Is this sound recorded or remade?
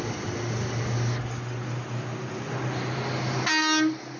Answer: recorded